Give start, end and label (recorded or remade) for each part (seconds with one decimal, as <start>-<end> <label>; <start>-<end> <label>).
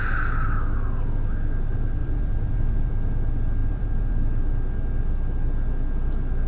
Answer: 0.0-2.0 recorded; 2.0-2.9 remade; 2.9-3.6 recorded; 3.6-4.4 remade; 4.4-6.5 recorded